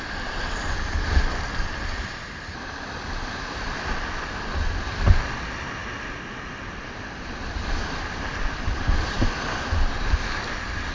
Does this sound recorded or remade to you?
recorded